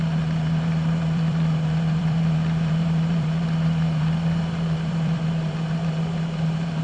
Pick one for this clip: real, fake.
fake